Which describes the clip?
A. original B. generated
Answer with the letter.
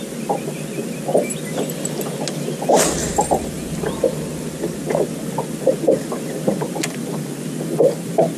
A